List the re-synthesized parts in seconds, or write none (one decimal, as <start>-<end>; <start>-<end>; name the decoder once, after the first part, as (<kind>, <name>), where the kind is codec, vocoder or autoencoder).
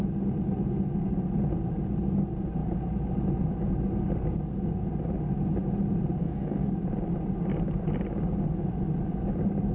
6.2-6.7 (codec, DAC)